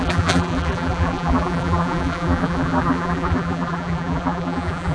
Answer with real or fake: fake